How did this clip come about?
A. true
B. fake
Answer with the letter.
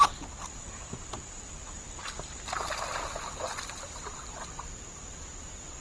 A